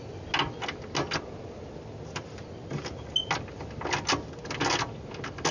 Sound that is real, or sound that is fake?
real